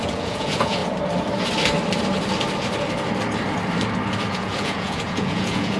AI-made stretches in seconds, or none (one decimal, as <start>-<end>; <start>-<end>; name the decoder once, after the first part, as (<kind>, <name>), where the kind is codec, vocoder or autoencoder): 0.0-0.8 (vocoder, Vocos); 4.3-5.8